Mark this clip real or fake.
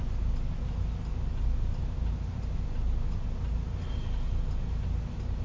real